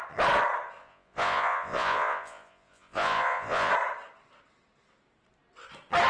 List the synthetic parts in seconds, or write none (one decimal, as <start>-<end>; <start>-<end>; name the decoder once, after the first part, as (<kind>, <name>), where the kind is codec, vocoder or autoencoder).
0.8-3.7 (vocoder, Vocos)